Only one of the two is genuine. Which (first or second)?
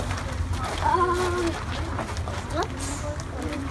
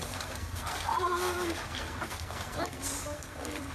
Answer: first